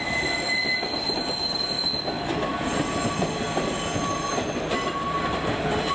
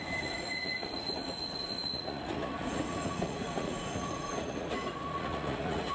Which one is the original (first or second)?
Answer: first